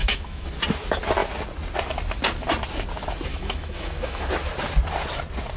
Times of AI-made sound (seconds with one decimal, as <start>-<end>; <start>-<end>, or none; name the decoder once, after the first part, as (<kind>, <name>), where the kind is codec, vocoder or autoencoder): 0.0-0.5 (autoencoder, DAC-VAE); 3.3-4.3